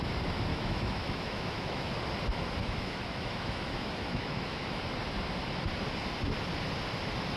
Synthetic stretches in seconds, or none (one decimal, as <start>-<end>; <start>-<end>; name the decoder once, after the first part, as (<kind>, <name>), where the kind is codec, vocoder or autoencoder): 0.5-1.9 (autoencoder, DAC-VAE); 2.6-4.8